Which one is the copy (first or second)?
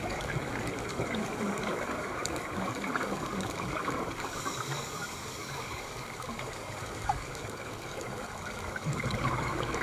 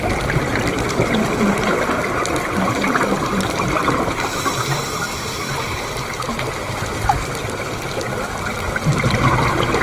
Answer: first